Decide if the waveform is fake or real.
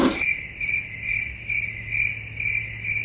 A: real